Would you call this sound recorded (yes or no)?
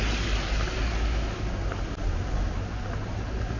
yes